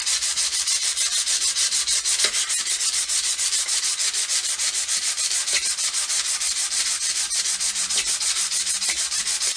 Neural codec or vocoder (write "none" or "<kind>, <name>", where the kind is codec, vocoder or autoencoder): vocoder, BigVGAN v2